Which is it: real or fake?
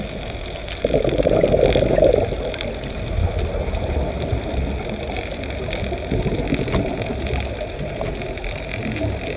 real